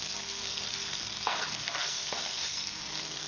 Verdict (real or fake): fake